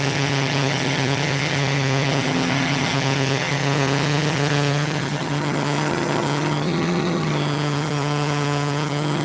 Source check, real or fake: fake